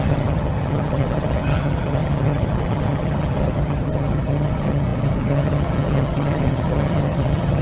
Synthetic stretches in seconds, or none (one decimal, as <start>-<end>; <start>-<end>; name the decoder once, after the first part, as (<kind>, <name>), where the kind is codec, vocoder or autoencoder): 0.0-7.6 (vocoder, HiFi-GAN)